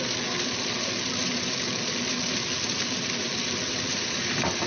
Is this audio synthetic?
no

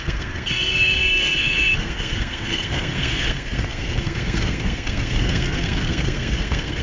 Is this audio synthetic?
yes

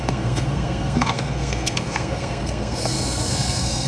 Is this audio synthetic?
yes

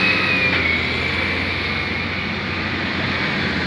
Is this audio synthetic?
no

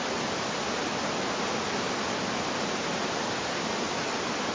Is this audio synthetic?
no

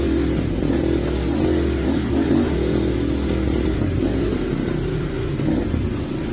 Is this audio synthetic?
no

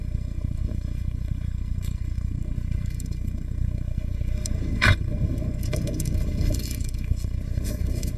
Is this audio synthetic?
yes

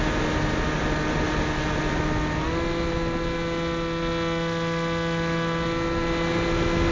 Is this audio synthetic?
no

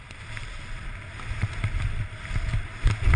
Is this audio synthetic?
no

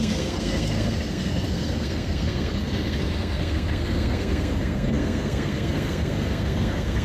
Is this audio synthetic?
yes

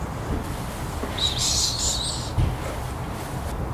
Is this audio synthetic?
no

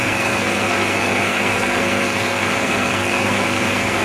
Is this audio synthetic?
yes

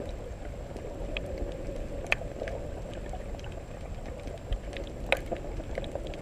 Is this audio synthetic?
no